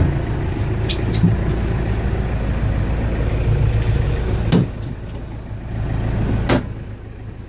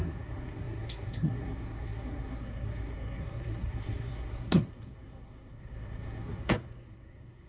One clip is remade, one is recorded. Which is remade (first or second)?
second